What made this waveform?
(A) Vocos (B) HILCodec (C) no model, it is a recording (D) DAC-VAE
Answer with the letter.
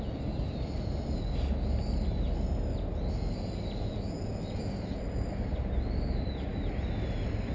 C